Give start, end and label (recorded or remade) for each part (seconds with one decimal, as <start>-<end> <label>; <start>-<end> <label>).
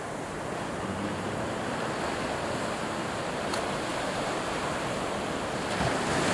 0.0-3.9 recorded; 3.9-4.4 remade; 4.4-6.3 recorded